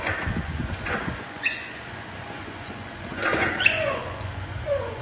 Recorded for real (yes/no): no